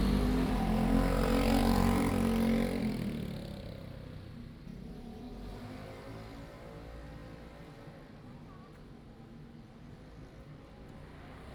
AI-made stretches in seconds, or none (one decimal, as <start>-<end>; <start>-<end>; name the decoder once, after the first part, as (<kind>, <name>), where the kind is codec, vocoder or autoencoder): 1.6-2.1 (vocoder, BigVGAN v2); 4.7-5.5